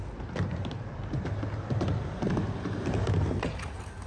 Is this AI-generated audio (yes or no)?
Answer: no